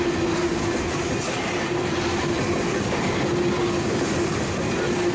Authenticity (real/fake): real